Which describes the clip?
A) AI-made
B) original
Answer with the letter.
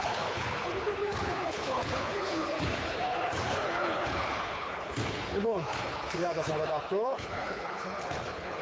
A